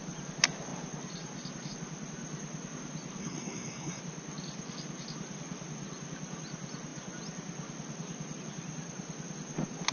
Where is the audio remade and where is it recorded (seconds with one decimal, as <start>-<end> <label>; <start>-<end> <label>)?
0.0-3.2 recorded; 3.2-4.0 remade; 4.0-9.9 recorded